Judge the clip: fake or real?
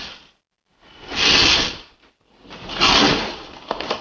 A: fake